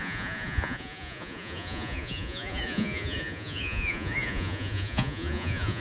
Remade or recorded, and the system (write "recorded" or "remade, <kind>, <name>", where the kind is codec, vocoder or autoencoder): remade, vocoder, Vocos